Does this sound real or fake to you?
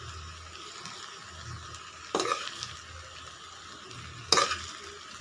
real